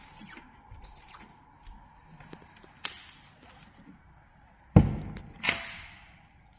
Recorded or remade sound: recorded